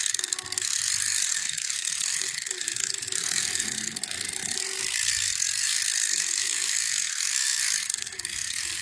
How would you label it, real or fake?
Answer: fake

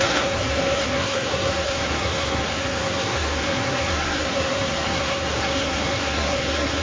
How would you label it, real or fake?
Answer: fake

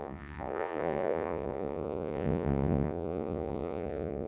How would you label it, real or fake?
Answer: fake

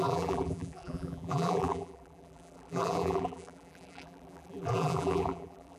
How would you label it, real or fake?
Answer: fake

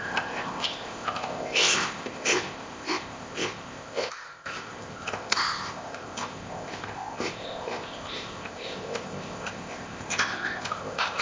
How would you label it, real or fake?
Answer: fake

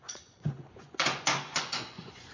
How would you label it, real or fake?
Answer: fake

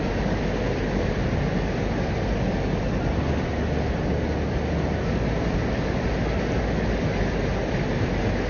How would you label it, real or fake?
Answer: real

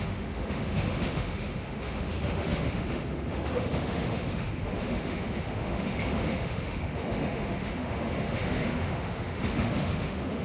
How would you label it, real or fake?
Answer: fake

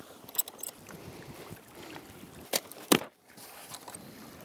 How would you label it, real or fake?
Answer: real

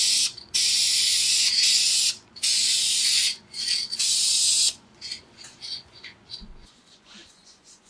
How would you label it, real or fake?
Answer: fake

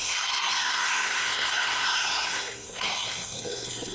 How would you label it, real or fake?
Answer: fake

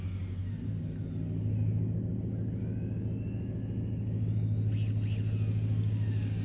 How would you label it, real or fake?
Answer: real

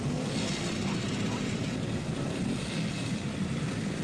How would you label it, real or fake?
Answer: real